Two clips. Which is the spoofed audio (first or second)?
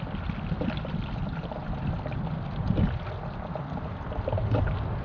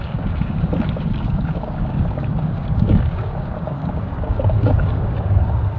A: second